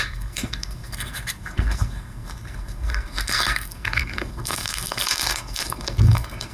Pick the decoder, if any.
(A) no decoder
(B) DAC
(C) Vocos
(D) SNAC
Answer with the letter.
D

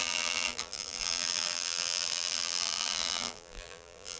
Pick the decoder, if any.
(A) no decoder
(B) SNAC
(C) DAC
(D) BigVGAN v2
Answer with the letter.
D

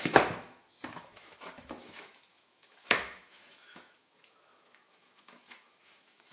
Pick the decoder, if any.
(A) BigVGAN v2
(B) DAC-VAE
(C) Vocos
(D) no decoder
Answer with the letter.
B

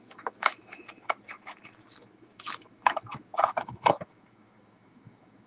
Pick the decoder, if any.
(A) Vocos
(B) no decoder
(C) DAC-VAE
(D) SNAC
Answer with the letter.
C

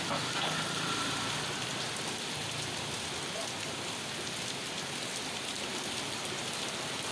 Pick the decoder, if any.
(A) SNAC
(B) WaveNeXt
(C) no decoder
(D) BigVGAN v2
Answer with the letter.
C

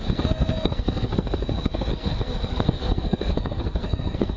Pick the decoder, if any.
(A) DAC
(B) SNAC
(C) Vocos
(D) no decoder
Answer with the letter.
B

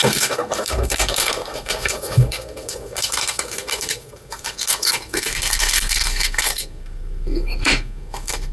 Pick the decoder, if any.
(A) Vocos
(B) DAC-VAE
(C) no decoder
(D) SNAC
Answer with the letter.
D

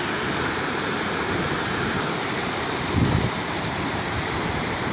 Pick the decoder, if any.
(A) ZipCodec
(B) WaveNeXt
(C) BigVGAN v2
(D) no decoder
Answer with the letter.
C